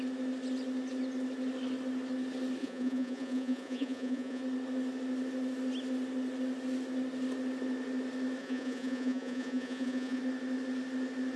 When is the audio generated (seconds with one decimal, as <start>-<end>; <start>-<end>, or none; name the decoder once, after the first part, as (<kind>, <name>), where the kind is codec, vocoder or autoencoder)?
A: 2.6-4.4 (vocoder, Vocos); 8.4-10.2